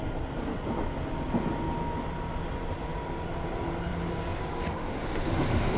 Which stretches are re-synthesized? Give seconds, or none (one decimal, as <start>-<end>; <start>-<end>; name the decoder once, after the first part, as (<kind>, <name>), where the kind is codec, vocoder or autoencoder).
4.7-5.8 (autoencoder, DAC-VAE)